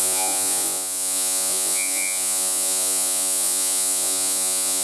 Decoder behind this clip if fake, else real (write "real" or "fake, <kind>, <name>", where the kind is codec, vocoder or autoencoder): fake, vocoder, Vocos